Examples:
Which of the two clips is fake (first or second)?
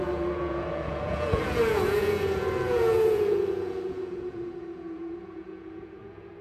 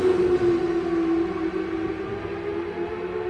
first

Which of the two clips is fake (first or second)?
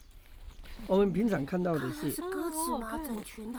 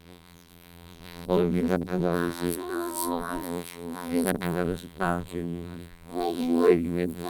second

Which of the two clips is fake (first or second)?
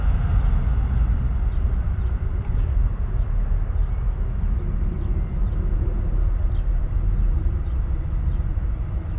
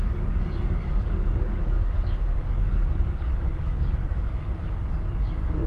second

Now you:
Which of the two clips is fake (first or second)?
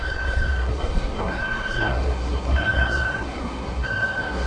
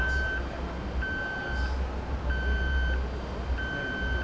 first